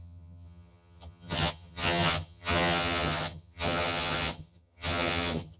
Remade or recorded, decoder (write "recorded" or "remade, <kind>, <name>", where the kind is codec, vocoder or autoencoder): remade, vocoder, HiFi-GAN